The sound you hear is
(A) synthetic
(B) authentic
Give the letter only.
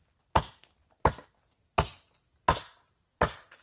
B